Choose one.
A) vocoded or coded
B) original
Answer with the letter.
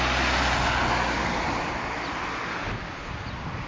B